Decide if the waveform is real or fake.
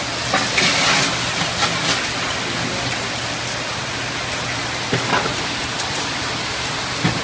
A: real